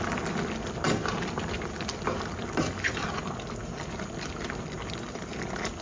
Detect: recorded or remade recorded